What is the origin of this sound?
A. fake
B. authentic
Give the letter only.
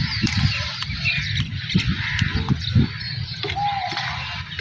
B